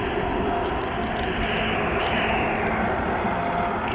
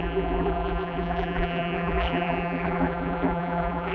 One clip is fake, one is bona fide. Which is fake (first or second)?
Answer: second